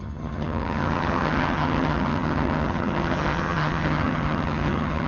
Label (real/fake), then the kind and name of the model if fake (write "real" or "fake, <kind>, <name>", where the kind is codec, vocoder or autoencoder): fake, vocoder, HiFi-GAN